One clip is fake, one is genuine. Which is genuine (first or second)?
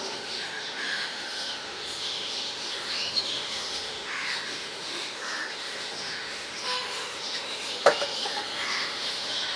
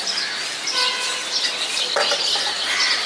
second